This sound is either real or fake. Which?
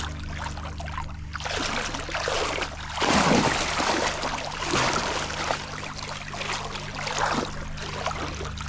real